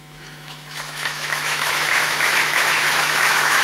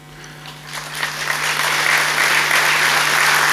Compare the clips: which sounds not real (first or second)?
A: first